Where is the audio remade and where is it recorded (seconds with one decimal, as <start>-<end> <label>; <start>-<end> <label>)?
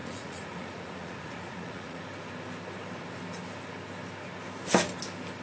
0.0-2.0 remade; 2.0-5.4 recorded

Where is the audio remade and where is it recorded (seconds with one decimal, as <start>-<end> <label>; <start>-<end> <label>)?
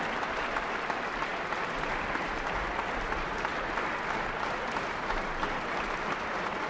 0.0-6.7 recorded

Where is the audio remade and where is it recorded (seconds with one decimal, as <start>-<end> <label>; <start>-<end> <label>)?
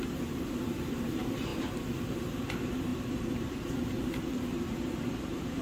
0.0-1.5 remade; 1.5-2.1 recorded; 2.1-5.6 remade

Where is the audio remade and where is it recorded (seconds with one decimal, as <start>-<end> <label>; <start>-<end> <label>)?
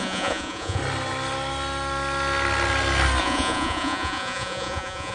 0.0-0.8 remade; 0.8-3.2 recorded; 3.2-5.1 remade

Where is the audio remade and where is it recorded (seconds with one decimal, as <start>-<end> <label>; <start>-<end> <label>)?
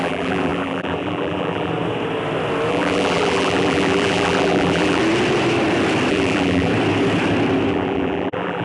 0.0-1.7 remade; 1.7-2.7 recorded; 2.7-5.0 remade; 5.0-6.1 recorded; 6.1-6.7 remade; 6.7-7.7 recorded; 7.7-8.6 remade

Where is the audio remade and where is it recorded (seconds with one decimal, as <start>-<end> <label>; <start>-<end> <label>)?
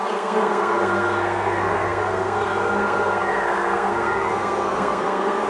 0.0-5.5 remade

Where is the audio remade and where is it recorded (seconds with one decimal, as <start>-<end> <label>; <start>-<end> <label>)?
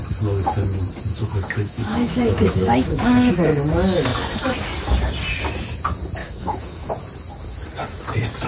0.0-1.1 recorded; 1.1-3.3 remade; 3.3-6.2 recorded; 6.2-6.9 remade; 6.9-8.5 recorded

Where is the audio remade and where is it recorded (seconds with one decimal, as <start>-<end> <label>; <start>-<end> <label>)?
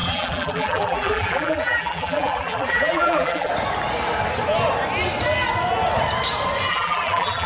0.0-3.5 remade; 3.5-6.7 recorded; 6.7-7.5 remade